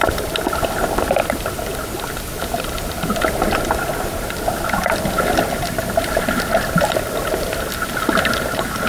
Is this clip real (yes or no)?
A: yes